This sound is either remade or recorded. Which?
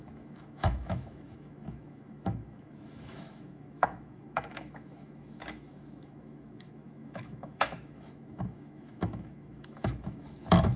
remade